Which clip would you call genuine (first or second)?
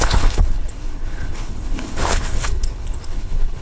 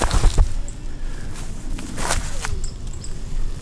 second